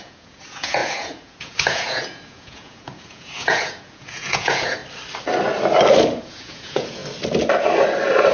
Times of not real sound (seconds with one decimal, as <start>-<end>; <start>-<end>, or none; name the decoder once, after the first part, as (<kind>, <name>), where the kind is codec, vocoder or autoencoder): 0.0-4.8 (vocoder, Vocos); 6.2-7.0